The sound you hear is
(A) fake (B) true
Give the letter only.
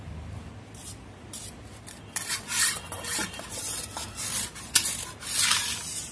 B